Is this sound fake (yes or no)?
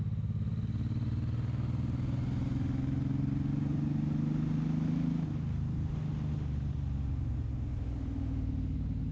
no